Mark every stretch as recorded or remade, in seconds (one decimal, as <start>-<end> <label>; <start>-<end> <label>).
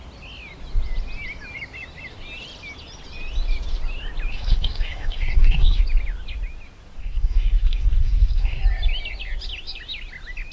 0.0-4.3 recorded; 4.3-5.8 remade; 5.8-7.0 recorded; 7.0-8.6 remade; 8.6-10.5 recorded